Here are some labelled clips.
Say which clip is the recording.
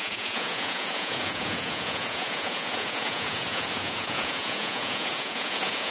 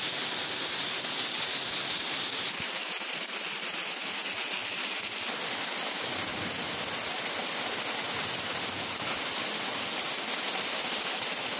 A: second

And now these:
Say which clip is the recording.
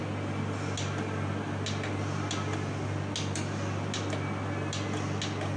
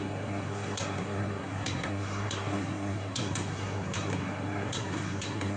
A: first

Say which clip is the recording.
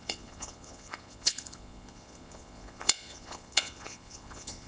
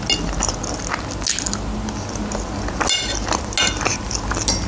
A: second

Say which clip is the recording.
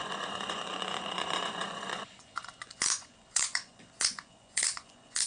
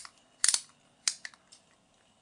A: second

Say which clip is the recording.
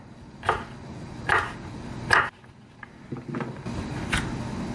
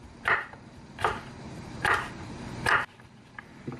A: first